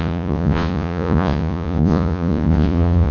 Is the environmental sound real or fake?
fake